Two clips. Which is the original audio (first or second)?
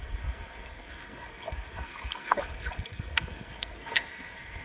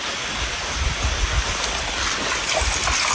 second